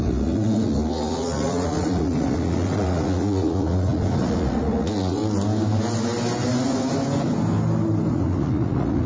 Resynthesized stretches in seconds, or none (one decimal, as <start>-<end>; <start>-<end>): 0.0-5.2; 8.1-9.1